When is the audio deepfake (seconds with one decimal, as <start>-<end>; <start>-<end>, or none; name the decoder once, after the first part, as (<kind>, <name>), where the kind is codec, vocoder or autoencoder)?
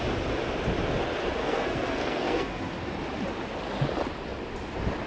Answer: 1.4-2.9 (codec, SNAC)